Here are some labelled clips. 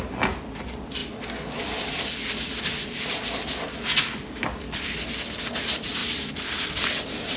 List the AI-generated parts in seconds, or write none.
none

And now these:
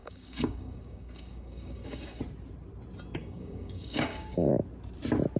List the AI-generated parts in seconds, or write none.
0.0-2.2 (codec, DAC); 3.2-4.5

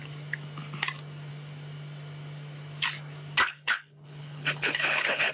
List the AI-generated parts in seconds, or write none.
3.5-5.3 (codec, HILCodec)